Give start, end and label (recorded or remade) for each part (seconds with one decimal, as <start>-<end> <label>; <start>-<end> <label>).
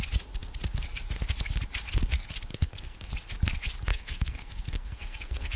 0.0-2.5 recorded; 2.5-3.1 remade; 3.1-3.9 recorded; 3.9-5.6 remade